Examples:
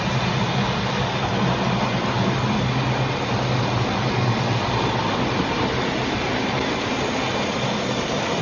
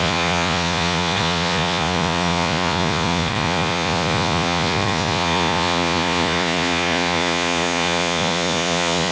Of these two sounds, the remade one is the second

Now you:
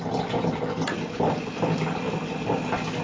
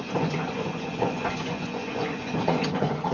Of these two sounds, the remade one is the second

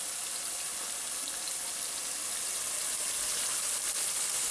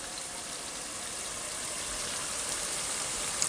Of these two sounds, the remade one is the second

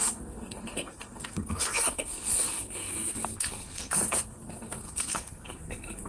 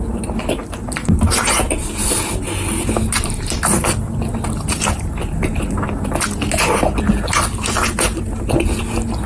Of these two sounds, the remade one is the first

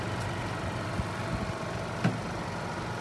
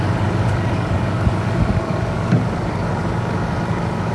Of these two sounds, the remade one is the second